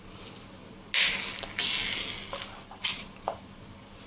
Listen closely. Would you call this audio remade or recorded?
recorded